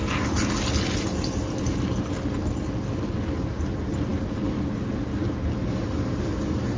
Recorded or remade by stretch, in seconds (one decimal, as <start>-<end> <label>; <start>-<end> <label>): 0.0-6.8 recorded